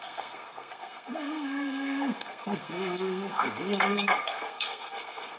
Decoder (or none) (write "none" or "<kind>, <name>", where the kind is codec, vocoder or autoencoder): codec, SNAC